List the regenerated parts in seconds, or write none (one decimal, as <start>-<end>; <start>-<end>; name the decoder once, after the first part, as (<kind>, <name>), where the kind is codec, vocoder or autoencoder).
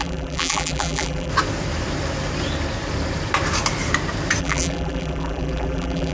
0.0-1.3 (vocoder, BigVGAN v2); 4.4-6.1